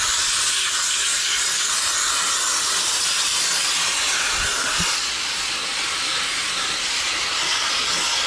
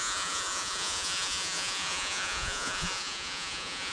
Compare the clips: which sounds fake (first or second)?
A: second